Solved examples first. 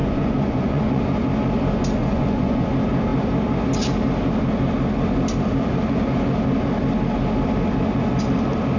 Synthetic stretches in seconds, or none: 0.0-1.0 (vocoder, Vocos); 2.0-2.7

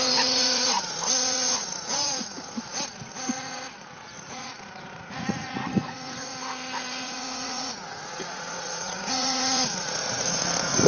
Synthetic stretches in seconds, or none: 0.0-6.3 (vocoder, Vocos); 7.0-10.9

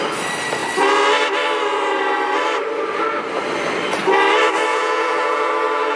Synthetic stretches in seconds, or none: 4.7-5.5 (vocoder, Vocos)

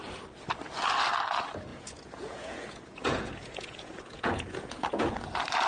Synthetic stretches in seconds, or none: 1.7-5.1 (vocoder, Vocos)